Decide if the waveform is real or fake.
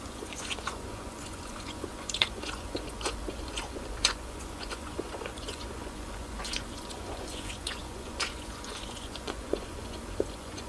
fake